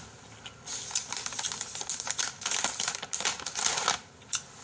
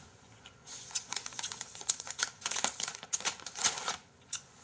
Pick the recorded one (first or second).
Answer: first